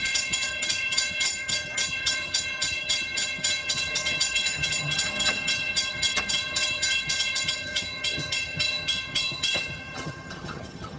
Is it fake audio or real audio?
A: fake